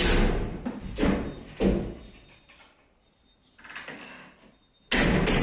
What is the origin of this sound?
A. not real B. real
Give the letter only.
B